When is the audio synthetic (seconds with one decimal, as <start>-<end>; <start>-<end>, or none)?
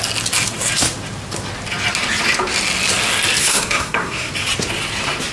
3.4-4.3